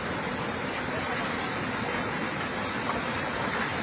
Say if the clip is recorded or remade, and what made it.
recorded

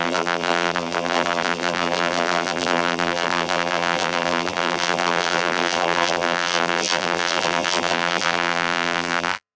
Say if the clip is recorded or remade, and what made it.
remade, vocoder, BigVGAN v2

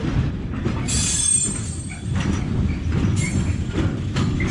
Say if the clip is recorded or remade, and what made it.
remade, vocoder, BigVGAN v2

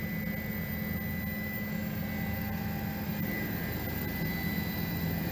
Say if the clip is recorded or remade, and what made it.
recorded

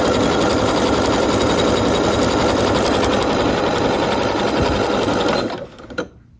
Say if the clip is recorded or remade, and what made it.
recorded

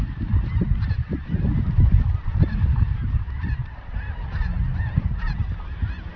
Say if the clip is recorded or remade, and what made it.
remade, vocoder, BigVGAN v2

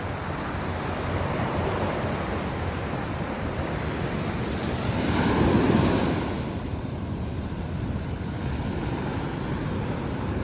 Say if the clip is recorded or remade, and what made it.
remade, vocoder, BigVGAN v2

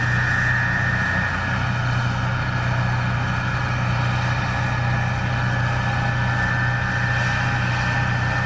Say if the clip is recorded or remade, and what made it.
recorded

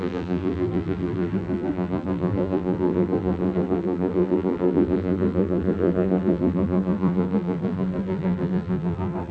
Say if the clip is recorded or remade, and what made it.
remade, vocoder, BigVGAN v2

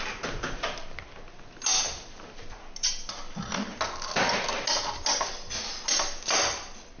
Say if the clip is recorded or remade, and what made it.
recorded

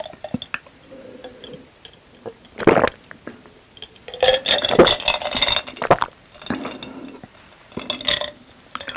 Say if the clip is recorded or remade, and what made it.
recorded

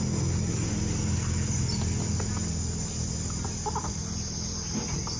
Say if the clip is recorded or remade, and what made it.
recorded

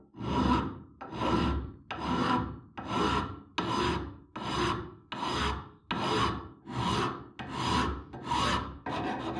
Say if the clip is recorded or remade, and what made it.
recorded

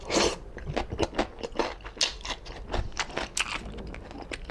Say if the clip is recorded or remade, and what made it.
recorded